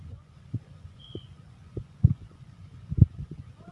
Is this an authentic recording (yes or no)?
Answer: no